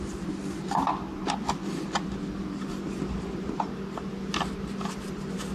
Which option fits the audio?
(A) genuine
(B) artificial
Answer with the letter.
A